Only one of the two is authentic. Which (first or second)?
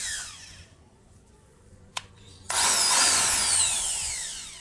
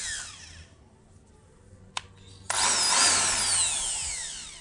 second